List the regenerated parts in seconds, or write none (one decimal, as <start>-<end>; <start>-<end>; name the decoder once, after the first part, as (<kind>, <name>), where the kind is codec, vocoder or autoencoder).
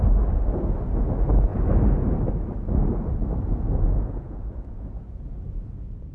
3.5-6.1 (vocoder, Vocos)